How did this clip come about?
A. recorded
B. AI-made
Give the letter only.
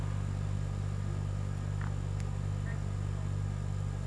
A